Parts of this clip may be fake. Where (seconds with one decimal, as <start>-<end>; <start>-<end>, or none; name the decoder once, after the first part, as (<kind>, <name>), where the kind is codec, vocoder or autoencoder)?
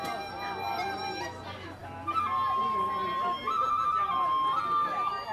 none